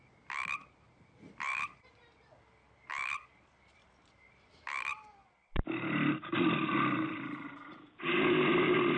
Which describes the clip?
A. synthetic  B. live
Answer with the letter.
A